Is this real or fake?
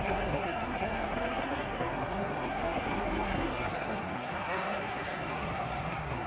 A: fake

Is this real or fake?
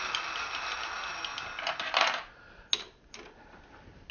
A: real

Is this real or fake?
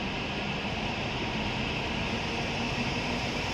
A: real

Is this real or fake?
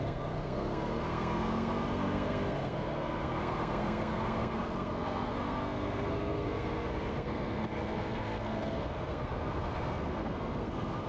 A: fake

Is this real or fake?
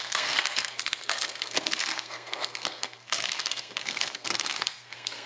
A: fake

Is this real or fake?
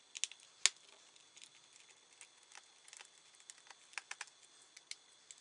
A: real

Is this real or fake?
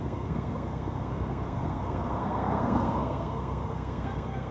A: fake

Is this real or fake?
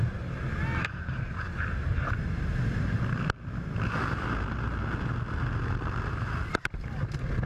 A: real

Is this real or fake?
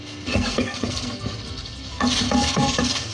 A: fake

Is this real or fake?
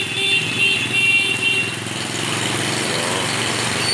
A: real